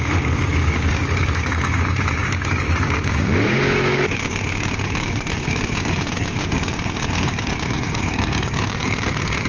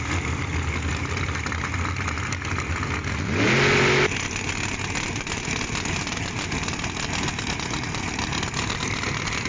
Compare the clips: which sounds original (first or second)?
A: second